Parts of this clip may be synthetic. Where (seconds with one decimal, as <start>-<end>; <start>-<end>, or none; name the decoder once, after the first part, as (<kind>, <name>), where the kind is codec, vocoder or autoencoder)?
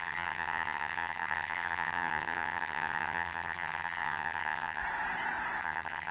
0.0-4.8 (vocoder, HiFi-GAN); 5.6-6.1